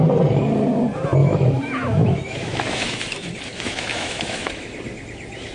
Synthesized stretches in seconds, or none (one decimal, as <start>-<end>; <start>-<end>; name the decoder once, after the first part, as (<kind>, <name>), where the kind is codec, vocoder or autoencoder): 1.2-3.0 (autoencoder, DAC-VAE); 3.5-4.7